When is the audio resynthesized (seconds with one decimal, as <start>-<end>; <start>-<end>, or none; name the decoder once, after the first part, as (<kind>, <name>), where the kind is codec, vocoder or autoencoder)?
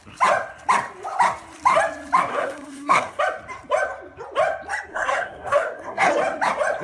2.3-3.2 (codec, SNAC); 4.9-6.1